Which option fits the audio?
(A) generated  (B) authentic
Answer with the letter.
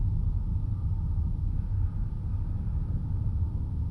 B